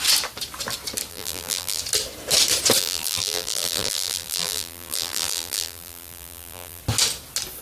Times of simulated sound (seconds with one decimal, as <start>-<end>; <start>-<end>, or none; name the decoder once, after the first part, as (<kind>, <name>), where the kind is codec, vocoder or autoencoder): 1.1-1.8 (vocoder, BigVGAN v2); 2.8-6.8